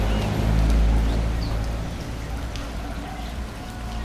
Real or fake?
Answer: real